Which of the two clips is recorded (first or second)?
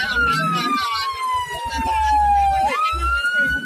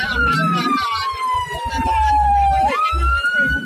first